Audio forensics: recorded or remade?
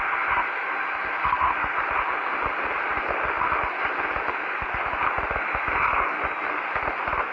recorded